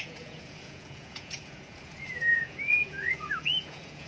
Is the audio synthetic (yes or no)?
yes